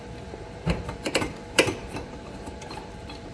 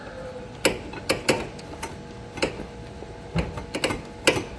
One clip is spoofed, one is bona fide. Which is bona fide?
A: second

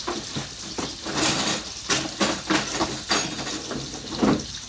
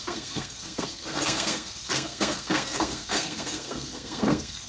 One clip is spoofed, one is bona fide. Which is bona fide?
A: first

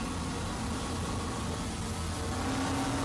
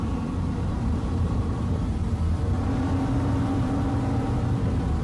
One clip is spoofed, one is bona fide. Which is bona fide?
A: first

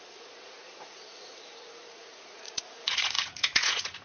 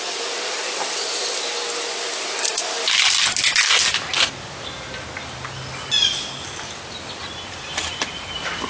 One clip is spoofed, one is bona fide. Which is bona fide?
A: second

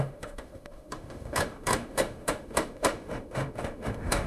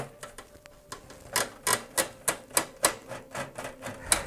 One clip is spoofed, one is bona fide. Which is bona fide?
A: second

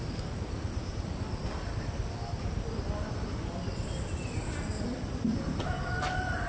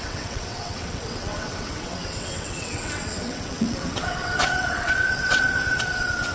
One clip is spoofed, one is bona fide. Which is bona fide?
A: first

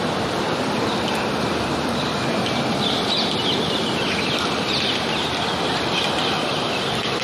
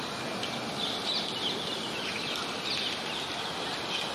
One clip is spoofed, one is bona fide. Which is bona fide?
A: second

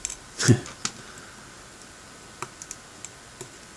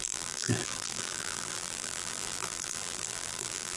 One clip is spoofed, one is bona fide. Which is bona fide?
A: first